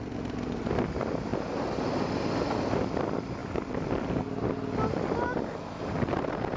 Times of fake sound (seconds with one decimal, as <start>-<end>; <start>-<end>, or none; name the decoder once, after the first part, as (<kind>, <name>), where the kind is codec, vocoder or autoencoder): none

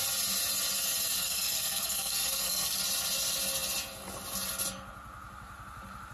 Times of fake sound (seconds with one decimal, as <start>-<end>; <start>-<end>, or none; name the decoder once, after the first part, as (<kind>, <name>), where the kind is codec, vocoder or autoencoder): 1.2-2.8 (codec, SNAC)

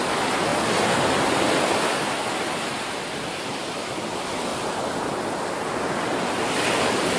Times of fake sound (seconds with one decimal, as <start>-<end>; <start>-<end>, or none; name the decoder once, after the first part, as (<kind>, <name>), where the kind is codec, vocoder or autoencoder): none

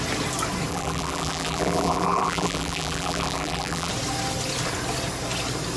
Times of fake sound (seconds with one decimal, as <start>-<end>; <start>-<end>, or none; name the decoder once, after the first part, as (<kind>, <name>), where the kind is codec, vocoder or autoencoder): 0.7-3.9 (vocoder, BigVGAN v2)

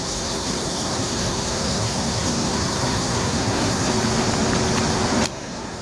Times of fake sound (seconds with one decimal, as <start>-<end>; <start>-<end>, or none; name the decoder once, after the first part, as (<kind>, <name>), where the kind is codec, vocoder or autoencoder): 0.0-3.9 (codec, SNAC); 5.3-5.8